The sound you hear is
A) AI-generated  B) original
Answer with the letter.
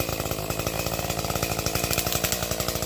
B